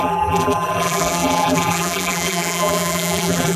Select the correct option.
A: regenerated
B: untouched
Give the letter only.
A